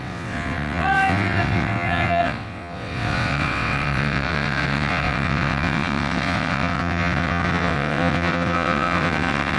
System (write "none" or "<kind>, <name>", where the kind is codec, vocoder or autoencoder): vocoder, WaveNeXt